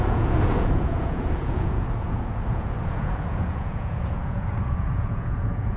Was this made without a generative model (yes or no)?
no